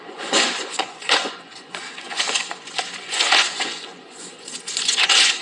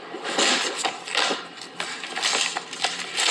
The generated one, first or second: first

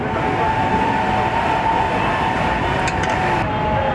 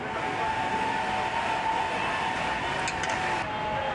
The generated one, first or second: first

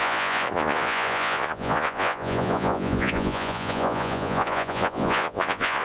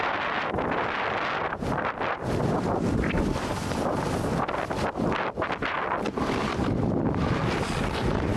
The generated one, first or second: first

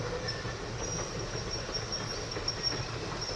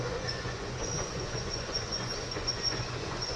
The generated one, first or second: second